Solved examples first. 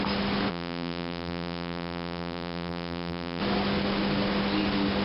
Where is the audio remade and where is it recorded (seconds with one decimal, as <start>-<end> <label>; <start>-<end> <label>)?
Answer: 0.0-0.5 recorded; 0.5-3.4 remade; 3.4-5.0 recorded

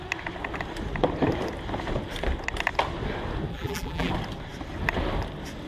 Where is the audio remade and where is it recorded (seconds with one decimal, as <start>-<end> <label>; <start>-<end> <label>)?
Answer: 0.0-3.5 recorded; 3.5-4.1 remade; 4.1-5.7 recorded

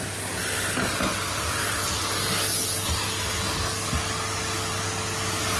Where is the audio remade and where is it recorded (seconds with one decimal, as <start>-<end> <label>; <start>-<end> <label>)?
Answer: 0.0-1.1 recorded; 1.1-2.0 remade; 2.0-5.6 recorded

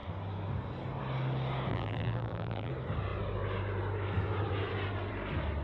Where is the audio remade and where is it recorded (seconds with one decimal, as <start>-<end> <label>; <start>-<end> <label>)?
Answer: 0.0-1.7 recorded; 1.7-2.7 remade; 2.7-5.6 recorded

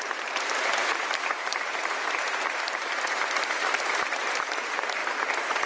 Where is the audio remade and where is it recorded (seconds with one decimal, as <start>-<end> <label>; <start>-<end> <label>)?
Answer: 0.0-5.0 remade; 5.0-5.7 recorded